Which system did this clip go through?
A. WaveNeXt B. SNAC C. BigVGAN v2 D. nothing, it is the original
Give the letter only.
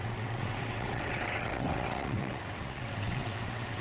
A